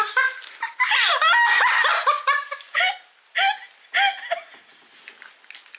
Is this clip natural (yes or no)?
yes